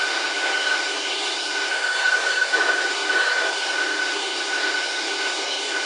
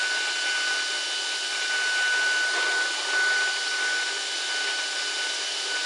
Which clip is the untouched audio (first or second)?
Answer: second